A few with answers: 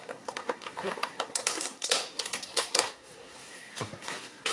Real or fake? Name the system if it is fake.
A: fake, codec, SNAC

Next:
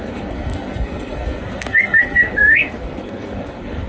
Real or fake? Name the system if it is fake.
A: fake, codec, SNAC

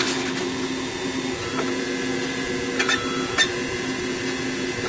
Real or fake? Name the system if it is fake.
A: real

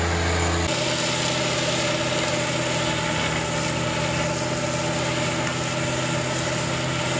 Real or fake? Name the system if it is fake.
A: real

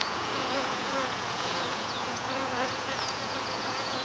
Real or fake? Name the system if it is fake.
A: fake, vocoder, Vocos